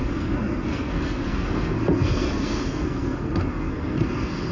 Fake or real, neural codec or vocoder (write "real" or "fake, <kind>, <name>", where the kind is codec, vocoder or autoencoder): fake, codec, SNAC